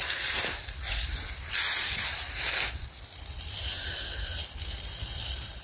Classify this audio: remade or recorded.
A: remade